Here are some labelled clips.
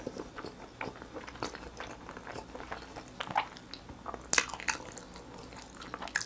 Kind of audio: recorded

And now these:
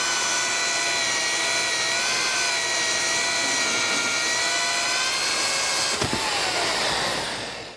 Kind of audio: recorded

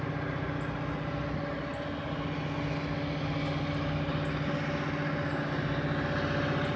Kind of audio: recorded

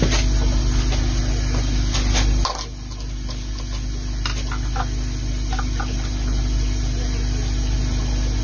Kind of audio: recorded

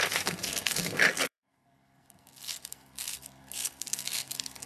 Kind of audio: remade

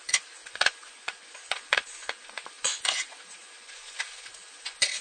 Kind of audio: remade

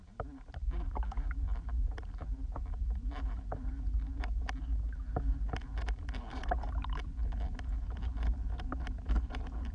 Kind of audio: recorded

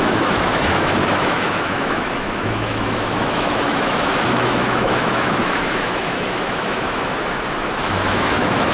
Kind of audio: remade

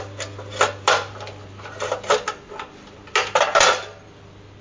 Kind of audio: recorded